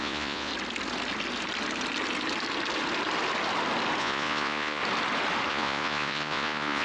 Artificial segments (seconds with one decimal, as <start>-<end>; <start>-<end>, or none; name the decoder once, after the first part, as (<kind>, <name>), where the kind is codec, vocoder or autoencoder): 0.0-0.5 (vocoder, Vocos); 4.0-4.8; 5.5-6.8

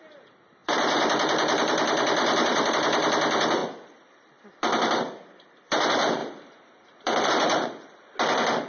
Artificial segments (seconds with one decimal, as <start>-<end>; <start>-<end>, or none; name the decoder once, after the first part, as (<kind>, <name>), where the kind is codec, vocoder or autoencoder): 0.6-2.7 (vocoder, BigVGAN v2); 3.6-4.4; 6.2-7.3

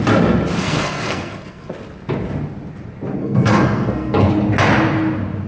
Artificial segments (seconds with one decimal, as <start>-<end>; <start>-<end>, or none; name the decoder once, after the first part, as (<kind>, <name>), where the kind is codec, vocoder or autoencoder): 0.6-1.7 (codec, SNAC); 3.2-4.3

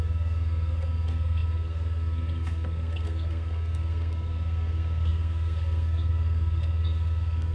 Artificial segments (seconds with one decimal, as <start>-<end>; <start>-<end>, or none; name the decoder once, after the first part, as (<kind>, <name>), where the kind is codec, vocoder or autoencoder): 0.0-7.5 (codec, SNAC)